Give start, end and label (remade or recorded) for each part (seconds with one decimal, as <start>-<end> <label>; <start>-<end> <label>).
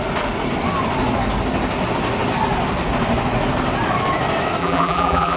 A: 0.0-4.6 recorded; 4.6-5.4 remade